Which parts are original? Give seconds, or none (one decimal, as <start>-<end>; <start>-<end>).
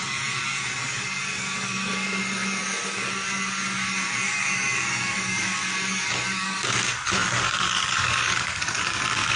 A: none